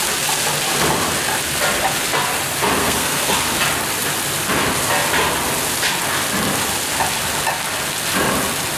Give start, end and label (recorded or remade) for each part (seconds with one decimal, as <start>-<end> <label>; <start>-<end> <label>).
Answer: 0.0-2.8 recorded; 2.8-3.3 remade; 3.3-8.8 recorded

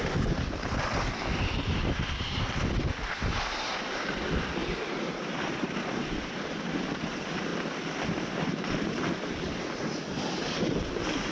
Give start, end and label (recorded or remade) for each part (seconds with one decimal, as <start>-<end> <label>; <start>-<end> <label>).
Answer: 0.0-7.5 recorded; 7.5-9.6 remade; 9.6-11.3 recorded

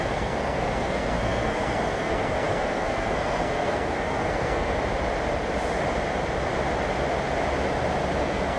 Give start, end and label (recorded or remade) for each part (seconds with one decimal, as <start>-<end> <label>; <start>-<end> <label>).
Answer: 0.0-4.7 remade; 4.7-8.2 recorded; 8.2-8.6 remade

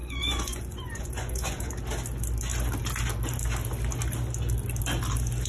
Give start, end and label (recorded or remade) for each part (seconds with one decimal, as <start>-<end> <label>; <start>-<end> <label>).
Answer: 0.0-1.7 remade; 1.7-5.5 recorded